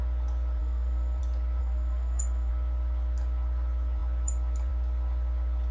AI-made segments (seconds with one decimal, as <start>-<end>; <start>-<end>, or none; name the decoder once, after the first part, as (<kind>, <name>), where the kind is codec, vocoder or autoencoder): 0.6-1.2 (codec, SNAC); 1.6-2.5